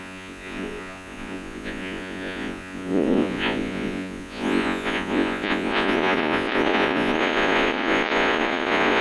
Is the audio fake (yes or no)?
yes